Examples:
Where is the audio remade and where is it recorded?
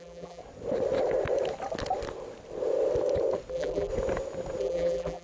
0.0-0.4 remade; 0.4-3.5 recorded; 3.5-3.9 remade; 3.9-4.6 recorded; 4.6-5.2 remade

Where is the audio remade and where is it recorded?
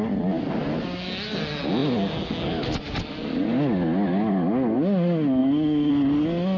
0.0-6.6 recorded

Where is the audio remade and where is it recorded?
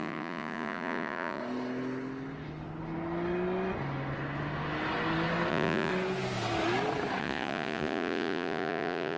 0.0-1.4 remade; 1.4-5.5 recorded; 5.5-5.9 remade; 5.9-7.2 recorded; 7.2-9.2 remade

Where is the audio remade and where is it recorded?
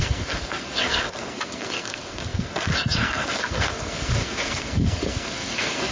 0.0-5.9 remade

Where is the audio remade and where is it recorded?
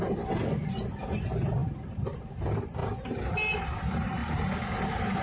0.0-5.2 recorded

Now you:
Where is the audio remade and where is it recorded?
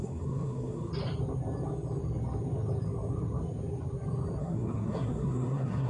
0.0-0.9 remade; 0.9-4.4 recorded; 4.4-5.9 remade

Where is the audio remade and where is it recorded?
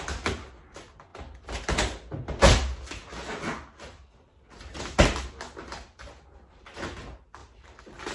0.0-8.1 recorded